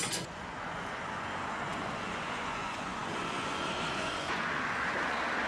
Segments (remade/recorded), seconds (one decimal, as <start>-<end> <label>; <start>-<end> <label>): 0.0-5.5 remade